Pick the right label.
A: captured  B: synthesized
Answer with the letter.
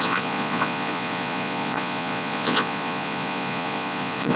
B